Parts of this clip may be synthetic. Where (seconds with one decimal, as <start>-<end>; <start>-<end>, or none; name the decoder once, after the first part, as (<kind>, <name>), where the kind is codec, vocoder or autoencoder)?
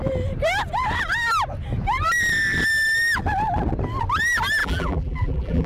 4.6-5.7 (vocoder, BigVGAN v2)